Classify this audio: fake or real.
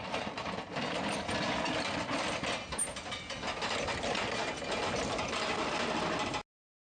real